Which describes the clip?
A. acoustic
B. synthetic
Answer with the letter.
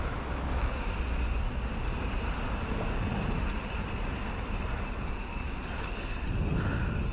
A